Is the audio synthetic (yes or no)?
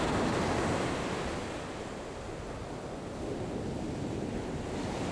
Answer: no